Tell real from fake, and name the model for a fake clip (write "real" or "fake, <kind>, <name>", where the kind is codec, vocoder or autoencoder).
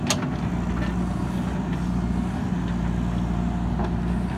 real